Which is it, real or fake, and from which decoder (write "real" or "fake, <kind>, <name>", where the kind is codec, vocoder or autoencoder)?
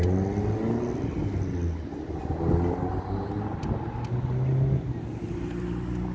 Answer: real